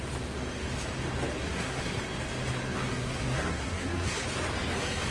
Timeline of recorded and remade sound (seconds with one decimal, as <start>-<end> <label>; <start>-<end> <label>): 0.0-1.4 recorded; 1.4-2.0 remade; 2.0-2.9 recorded; 2.9-4.2 remade; 4.2-5.1 recorded